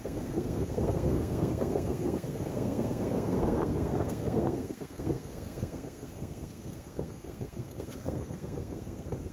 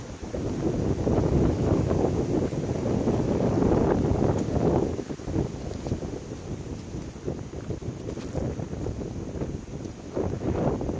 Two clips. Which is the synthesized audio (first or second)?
first